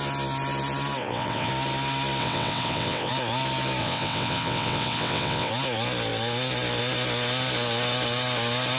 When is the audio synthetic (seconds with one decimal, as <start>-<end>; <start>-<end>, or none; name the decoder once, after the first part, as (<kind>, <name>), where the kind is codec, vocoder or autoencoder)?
1.0-1.5 (vocoder, WaveNeXt); 2.2-3.1; 3.8-5.5